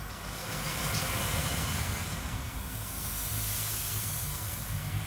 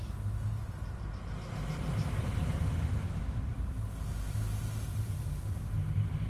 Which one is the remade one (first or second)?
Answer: first